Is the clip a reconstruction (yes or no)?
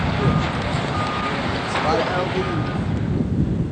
no